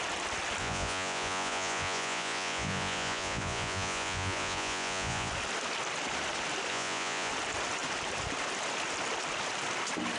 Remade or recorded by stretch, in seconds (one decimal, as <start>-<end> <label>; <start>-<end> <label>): 0.0-0.6 recorded; 0.6-5.3 remade; 5.3-6.7 recorded; 6.7-7.3 remade; 7.3-10.2 recorded